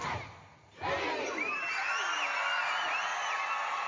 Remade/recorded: recorded